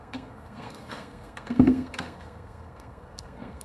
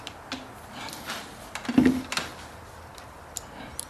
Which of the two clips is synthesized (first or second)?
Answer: first